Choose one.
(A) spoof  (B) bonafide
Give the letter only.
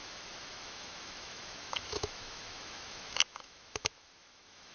A